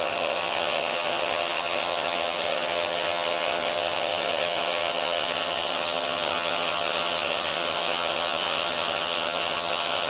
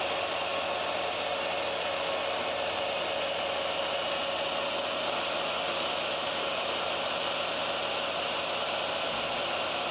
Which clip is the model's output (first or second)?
first